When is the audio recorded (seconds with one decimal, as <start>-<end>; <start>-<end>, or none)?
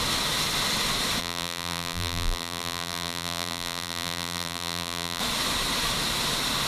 0.0-1.2; 5.2-6.7